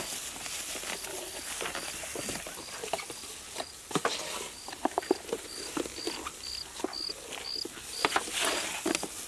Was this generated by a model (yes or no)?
no